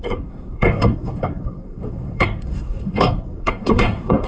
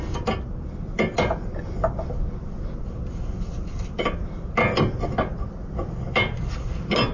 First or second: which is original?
second